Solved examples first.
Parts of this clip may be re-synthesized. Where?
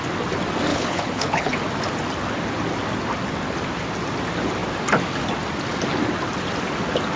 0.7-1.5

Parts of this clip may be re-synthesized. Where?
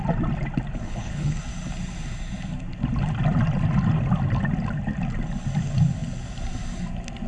0.8-1.4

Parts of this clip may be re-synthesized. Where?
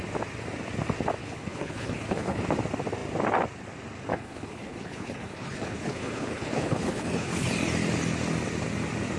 1.2-2.4; 4.1-7.5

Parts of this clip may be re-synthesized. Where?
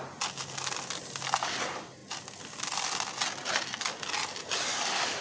none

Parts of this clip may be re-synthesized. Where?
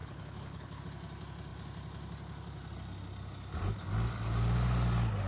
0.0-0.8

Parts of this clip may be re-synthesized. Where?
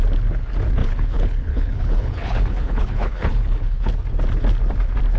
0.8-3.9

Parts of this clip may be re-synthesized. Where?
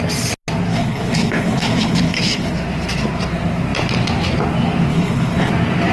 0.7-2.5; 4.9-5.5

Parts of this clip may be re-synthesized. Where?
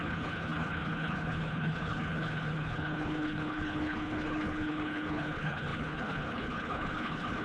0.0-7.4